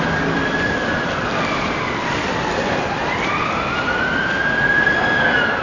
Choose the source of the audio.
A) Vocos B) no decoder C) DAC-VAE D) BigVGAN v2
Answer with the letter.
D